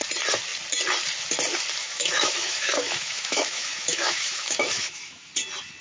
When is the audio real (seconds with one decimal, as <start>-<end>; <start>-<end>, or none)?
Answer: 0.0-1.8; 5.3-5.8